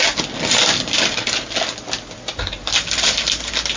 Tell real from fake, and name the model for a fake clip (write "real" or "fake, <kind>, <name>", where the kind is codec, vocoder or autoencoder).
real